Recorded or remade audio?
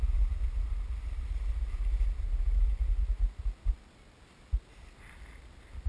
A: recorded